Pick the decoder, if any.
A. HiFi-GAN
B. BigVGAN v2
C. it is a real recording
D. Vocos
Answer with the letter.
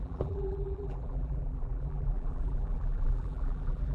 B